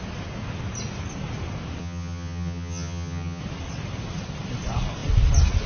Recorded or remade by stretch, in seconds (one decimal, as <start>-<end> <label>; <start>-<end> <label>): 0.0-1.8 recorded; 1.8-3.4 remade; 3.4-5.7 recorded